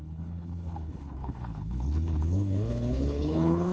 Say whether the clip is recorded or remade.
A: remade